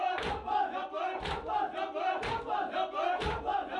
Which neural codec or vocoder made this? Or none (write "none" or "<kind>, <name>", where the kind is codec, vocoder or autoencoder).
none